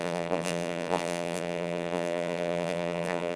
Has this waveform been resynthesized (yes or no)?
yes